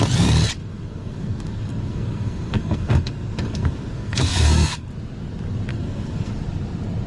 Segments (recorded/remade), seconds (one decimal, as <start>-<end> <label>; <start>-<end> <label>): 0.0-0.6 recorded; 0.6-4.9 remade; 4.9-5.7 recorded; 5.7-6.3 remade; 6.3-7.1 recorded